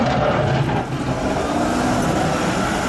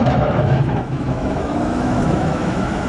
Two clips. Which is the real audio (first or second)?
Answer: first